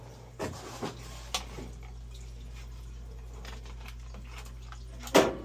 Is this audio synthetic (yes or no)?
no